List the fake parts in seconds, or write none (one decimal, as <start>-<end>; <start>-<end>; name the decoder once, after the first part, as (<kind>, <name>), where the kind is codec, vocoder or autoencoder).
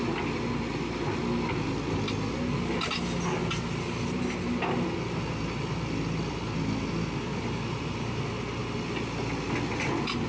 none